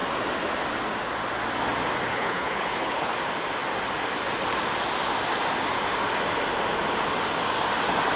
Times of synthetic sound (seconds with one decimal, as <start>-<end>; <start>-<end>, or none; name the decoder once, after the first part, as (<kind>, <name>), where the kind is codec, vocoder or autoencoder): 2.1-3.1 (codec, HILCodec)